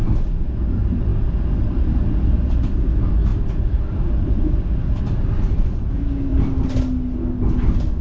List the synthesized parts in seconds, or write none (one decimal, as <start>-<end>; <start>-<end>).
none